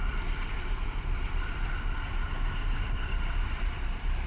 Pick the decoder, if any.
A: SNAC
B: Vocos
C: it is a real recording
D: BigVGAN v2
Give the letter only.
D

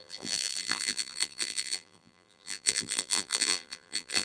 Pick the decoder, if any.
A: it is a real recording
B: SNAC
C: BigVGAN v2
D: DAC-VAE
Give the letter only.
C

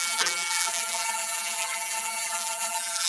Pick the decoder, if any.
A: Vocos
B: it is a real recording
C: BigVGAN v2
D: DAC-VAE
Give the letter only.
C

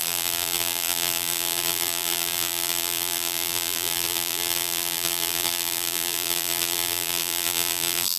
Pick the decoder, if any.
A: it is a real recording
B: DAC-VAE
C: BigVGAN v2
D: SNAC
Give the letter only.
C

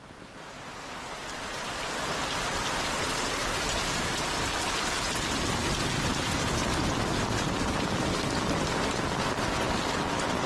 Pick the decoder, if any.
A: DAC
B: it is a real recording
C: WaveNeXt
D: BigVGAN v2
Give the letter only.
B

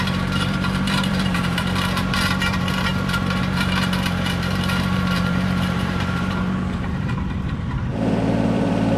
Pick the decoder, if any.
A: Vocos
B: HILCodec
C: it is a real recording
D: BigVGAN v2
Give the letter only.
D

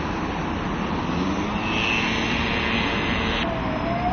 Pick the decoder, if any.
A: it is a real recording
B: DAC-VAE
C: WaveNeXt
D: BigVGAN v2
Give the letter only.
A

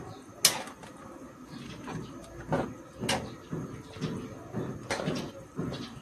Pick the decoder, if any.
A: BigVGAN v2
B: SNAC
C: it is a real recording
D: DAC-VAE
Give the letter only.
C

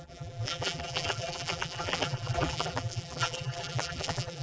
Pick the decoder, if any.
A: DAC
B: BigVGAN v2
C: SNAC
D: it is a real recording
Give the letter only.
B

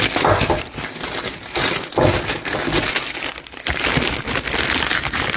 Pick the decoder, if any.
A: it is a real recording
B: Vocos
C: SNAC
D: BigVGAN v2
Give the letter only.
A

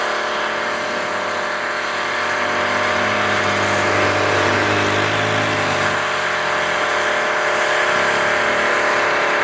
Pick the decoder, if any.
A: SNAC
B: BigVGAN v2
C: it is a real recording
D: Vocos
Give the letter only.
C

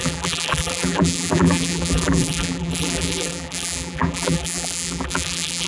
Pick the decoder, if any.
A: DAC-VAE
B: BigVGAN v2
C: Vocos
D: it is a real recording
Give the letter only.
B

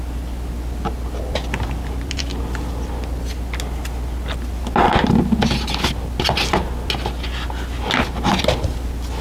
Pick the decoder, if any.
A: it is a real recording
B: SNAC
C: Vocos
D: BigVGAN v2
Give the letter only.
A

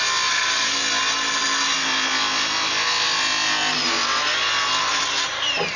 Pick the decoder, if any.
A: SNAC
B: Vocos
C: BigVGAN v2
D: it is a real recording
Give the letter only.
D